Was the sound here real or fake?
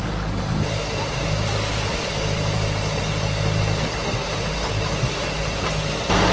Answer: fake